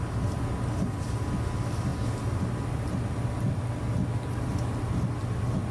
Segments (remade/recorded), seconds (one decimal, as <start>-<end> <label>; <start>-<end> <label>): 0.0-5.7 recorded